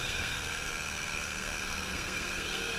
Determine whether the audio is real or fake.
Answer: fake